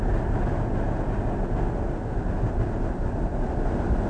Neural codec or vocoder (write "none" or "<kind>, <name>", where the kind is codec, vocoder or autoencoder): none